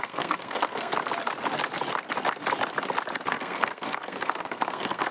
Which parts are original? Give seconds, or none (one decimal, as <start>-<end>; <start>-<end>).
0.9-3.3